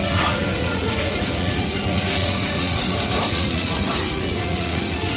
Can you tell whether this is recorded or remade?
remade